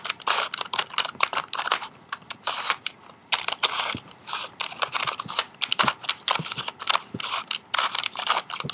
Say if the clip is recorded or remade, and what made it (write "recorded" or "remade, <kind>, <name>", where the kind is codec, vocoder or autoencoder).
recorded